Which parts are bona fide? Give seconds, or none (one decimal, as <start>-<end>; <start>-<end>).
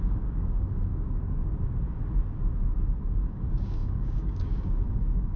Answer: 0.9-3.1